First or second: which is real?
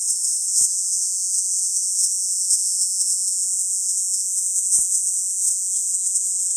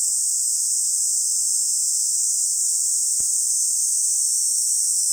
second